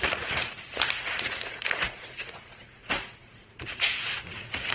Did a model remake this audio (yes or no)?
yes